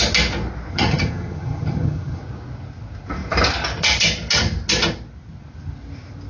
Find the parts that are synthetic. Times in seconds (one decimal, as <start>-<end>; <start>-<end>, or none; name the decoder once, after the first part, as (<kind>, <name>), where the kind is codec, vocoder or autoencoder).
0.7-2.2 (vocoder, HiFi-GAN)